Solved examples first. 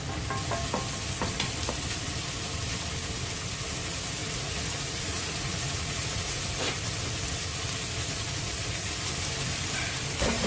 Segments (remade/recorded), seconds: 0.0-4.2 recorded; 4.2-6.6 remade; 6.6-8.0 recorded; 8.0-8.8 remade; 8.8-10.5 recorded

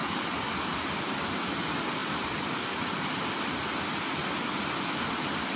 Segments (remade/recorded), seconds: 0.0-5.6 recorded

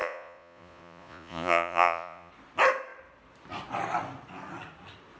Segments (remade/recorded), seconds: 0.0-2.3 remade; 2.3-5.2 recorded

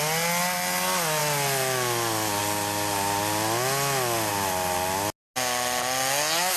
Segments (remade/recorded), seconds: 0.0-6.6 recorded

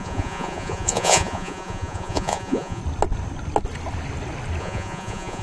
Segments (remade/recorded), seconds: 0.0-2.8 remade; 2.8-4.6 recorded; 4.6-5.4 remade

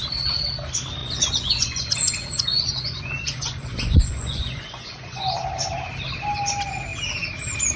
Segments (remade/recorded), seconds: 0.0-1.0 recorded; 1.0-5.2 remade; 5.2-7.8 recorded

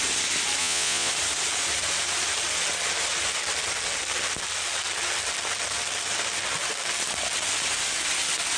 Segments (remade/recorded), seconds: 0.0-0.6 recorded; 0.6-1.1 remade; 1.1-8.6 recorded